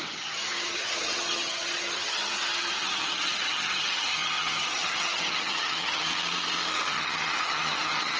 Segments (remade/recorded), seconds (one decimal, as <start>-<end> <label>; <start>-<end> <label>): 0.0-6.1 remade; 6.1-6.9 recorded; 6.9-8.2 remade